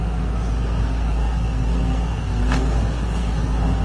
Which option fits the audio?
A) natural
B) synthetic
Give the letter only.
B